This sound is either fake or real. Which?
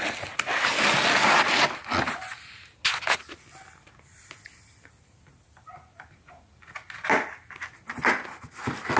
real